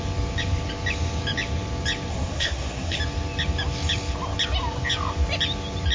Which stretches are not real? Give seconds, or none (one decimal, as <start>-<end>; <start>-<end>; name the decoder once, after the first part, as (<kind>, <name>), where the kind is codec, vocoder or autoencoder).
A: 2.1-3.0 (codec, SNAC)